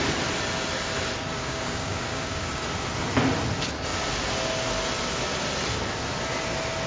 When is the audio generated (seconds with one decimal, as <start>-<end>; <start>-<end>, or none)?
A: 1.4-2.6